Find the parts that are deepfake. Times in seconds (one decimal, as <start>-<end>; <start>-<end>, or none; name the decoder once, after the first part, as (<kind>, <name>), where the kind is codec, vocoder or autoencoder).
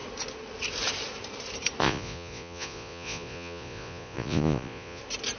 1.8-5.0 (vocoder, Vocos)